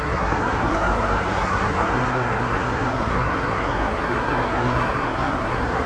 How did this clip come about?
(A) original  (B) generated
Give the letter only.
B